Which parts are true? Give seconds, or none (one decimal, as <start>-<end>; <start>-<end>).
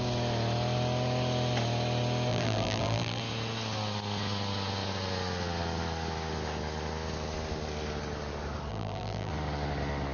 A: 0.0-2.3; 3.2-8.7; 9.3-10.1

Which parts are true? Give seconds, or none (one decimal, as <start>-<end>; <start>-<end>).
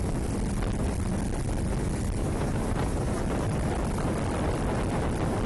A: 0.0-2.2; 3.2-5.5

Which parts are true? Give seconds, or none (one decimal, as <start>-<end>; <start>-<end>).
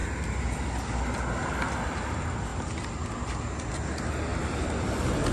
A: 0.0-5.3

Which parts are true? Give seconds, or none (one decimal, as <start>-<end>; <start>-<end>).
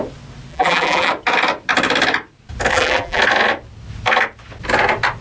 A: 0.0-0.5; 1.1-2.7; 3.2-5.2